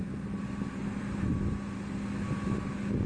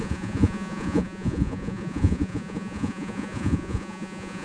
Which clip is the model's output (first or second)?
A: second